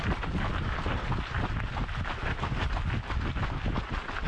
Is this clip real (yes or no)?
yes